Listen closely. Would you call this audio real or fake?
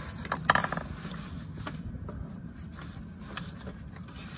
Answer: real